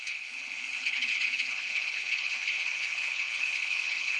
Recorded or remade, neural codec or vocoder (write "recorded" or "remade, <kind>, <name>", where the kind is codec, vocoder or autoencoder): remade, codec, HILCodec